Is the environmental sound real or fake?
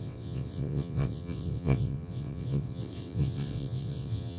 fake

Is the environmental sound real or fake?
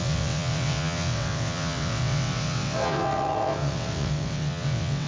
fake